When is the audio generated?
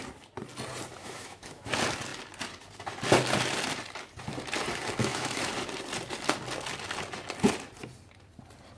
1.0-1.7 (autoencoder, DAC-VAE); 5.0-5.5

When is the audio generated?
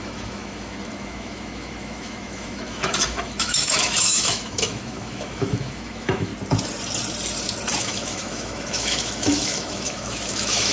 0.0-6.3 (autoencoder, DAC-VAE); 7.8-10.7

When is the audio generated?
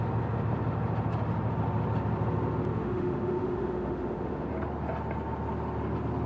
2.7-4.5 (autoencoder, DAC-VAE)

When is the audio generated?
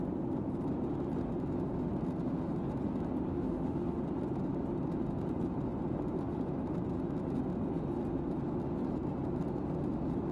3.3-4.0 (autoencoder, DAC-VAE)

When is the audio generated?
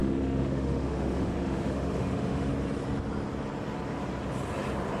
0.0-2.5 (autoencoder, DAC-VAE)